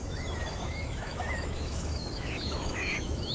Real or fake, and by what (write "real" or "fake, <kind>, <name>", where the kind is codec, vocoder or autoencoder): fake, autoencoder, DAC-VAE